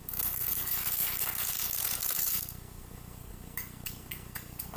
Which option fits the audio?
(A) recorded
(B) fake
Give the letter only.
B